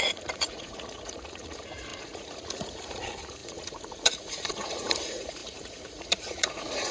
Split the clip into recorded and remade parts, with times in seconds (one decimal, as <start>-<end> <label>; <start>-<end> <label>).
0.0-6.9 remade